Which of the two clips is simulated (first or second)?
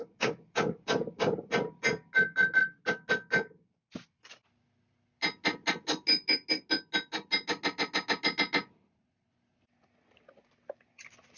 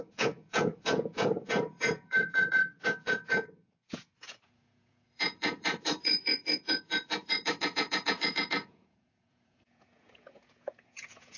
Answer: second